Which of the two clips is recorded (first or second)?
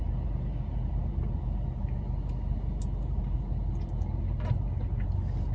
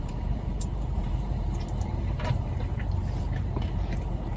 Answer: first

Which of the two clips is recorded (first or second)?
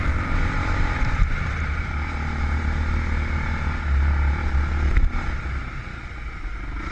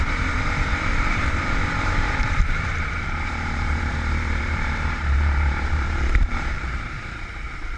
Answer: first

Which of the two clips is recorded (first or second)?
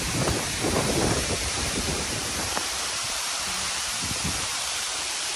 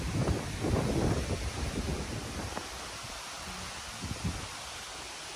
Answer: second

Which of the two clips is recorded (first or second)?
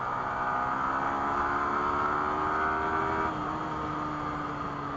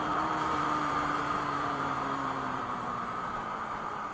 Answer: first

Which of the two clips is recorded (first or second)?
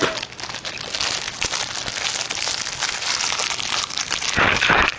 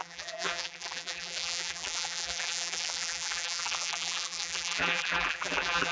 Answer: first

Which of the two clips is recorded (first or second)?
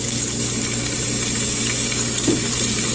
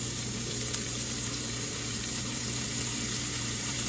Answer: first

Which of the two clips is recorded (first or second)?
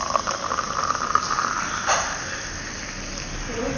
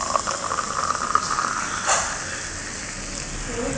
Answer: second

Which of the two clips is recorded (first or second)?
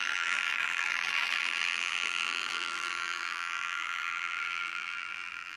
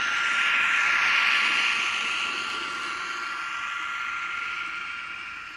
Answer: second